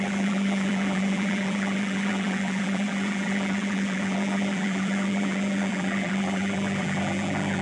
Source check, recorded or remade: remade